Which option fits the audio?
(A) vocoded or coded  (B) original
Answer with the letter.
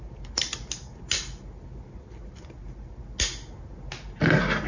B